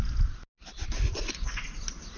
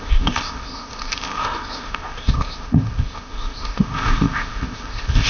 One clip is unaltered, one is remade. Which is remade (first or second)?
second